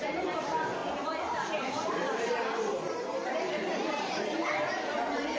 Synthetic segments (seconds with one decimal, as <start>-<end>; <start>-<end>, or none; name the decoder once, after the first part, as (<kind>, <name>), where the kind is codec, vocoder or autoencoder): 0.0-4.4 (vocoder, BigVGAN v2)